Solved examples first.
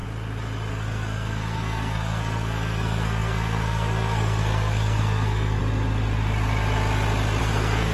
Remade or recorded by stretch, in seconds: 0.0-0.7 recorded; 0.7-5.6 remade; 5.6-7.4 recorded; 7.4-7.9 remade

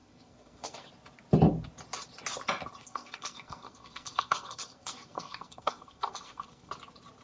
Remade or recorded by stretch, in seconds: 0.0-0.9 remade; 0.9-2.8 recorded; 2.8-6.7 remade; 6.7-7.2 recorded

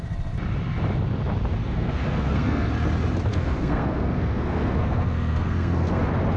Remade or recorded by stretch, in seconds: 0.0-1.6 recorded; 1.6-2.7 remade; 2.7-3.3 recorded; 3.3-6.0 remade; 6.0-6.4 recorded